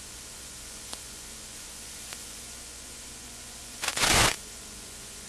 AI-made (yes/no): yes